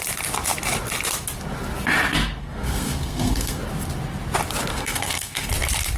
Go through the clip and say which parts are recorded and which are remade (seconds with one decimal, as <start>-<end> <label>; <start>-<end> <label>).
0.0-2.4 recorded; 2.4-3.6 remade; 3.6-4.7 recorded; 4.7-5.5 remade; 5.5-6.0 recorded